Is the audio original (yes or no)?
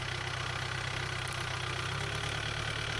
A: yes